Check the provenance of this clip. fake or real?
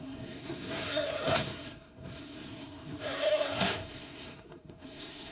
fake